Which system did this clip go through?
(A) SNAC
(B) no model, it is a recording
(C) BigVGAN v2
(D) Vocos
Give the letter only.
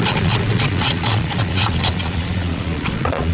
D